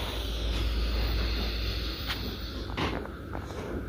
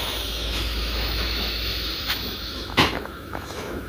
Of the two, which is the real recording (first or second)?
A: first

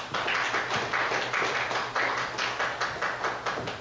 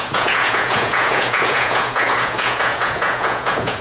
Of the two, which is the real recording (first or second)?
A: first